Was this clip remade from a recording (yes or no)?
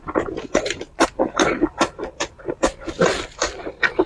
yes